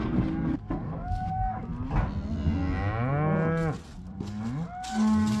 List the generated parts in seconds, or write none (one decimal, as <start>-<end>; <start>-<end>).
0.0-1.7; 4.9-5.4

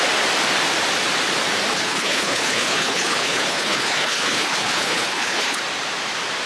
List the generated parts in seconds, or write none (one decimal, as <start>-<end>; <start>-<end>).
1.7-5.6